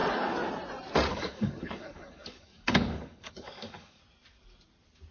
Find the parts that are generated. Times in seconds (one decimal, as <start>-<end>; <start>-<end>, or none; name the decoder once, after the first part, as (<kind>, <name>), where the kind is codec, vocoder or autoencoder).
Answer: 1.1-4.0 (codec, DAC)